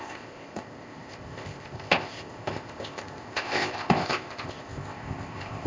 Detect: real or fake fake